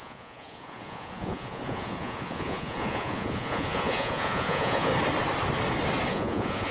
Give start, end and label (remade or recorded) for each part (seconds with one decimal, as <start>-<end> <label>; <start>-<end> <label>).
0.0-4.9 remade; 4.9-6.1 recorded; 6.1-6.7 remade